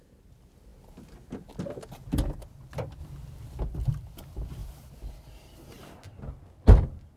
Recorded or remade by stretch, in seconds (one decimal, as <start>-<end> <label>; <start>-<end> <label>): 0.0-7.2 recorded